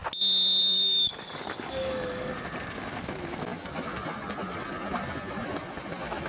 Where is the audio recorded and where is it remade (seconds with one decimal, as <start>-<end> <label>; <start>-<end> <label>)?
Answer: 0.0-0.6 recorded; 0.6-2.3 remade; 2.3-6.3 recorded